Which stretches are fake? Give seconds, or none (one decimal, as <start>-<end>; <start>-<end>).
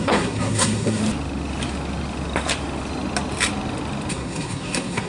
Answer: 0.0-1.0; 4.1-5.1